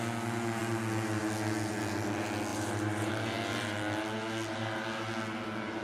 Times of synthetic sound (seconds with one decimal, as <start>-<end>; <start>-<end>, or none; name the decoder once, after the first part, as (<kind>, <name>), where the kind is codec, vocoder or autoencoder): 2.5-3.1 (vocoder, BigVGAN v2)